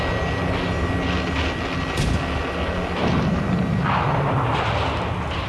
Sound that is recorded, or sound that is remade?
recorded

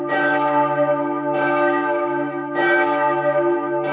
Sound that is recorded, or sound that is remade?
remade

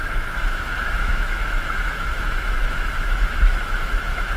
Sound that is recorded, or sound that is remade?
remade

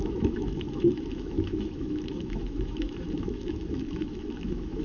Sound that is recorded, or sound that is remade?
remade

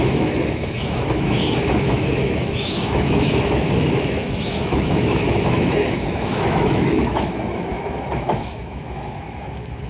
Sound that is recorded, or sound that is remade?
remade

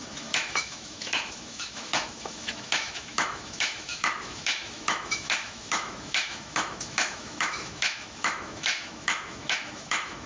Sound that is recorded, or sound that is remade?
remade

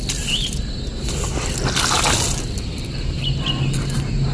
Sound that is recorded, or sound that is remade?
recorded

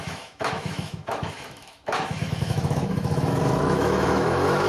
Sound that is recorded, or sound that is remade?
remade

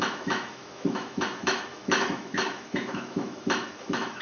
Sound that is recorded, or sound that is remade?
remade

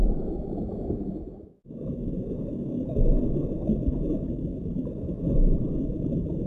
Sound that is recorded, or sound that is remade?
remade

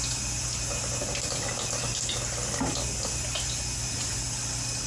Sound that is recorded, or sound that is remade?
recorded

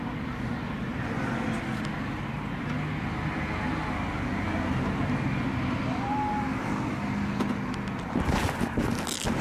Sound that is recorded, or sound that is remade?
recorded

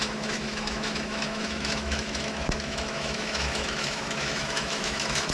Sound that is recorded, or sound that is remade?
remade